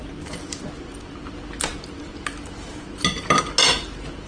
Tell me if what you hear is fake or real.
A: real